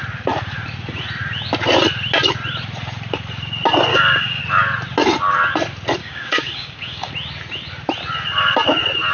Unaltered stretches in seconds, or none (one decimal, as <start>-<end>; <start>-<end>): 0.0-3.9; 4.4-6.0; 7.1-9.1